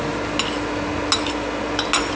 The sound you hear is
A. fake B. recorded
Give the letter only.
B